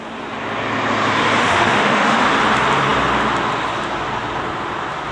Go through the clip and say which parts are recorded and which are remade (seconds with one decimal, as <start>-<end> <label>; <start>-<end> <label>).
0.0-1.4 recorded; 1.4-2.2 remade; 2.2-5.1 recorded